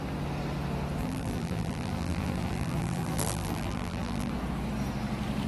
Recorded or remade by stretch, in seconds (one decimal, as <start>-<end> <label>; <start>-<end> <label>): 0.0-1.0 recorded; 1.0-4.3 remade; 4.3-5.5 recorded